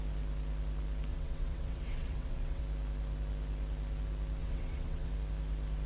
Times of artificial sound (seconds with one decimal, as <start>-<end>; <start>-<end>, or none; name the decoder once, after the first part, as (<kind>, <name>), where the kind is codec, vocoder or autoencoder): 1.1-2.6 (vocoder, WaveNeXt); 4.4-5.1